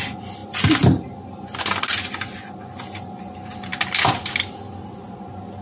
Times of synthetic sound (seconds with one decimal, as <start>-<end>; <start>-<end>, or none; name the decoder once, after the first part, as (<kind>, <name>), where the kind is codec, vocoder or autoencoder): none